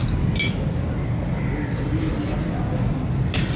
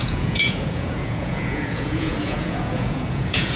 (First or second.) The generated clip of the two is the second